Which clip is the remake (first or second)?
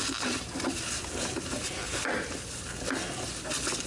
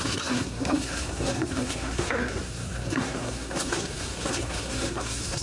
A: second